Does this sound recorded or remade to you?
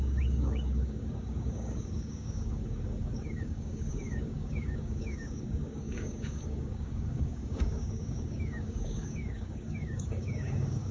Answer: remade